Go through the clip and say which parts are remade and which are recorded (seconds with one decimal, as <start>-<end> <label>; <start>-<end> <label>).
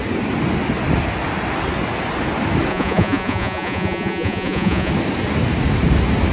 0.0-2.7 recorded; 2.7-4.9 remade; 4.9-6.3 recorded